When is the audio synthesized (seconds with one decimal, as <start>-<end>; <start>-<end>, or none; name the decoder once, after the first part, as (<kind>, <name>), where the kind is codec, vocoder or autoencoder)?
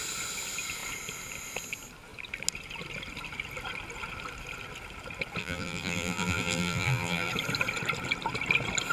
5.4-7.3 (vocoder, BigVGAN v2)